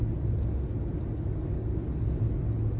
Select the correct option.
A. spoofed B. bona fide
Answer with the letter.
B